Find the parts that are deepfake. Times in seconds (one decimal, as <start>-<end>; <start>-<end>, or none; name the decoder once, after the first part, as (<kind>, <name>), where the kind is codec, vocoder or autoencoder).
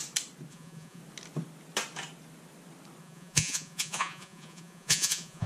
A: 0.5-1.0 (vocoder, Vocos); 3.0-5.5